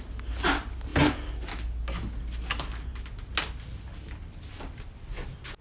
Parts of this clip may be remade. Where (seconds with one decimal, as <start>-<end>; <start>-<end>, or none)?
none